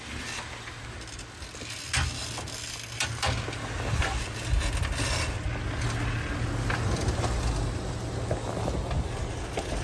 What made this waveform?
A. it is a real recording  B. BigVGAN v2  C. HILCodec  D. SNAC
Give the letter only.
A